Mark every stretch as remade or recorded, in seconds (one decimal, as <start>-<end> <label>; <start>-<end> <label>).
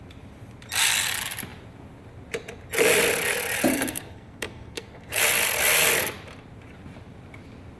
0.0-3.7 recorded; 3.7-5.2 remade; 5.2-7.8 recorded